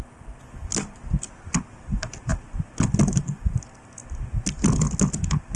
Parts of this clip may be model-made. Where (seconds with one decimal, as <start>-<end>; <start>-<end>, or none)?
none